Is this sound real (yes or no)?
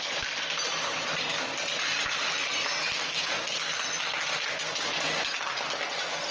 yes